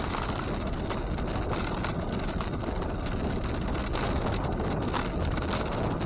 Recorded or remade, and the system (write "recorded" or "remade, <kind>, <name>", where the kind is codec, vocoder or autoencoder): recorded